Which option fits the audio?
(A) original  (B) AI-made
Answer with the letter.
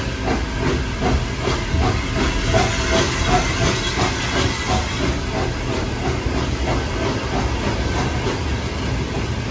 A